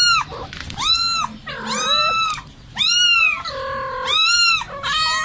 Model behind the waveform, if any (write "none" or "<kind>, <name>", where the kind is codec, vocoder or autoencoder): none